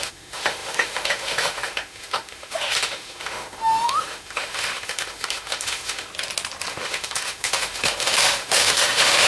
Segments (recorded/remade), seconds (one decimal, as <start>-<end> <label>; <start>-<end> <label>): 0.0-6.1 remade; 6.1-6.7 recorded; 6.7-9.3 remade